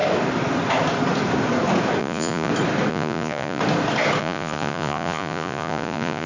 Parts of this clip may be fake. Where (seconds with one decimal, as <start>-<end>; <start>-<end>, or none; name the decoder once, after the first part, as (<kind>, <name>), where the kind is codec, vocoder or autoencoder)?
2.0-2.5 (vocoder, Vocos); 2.9-3.6; 4.2-6.3